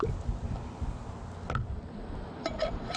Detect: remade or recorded recorded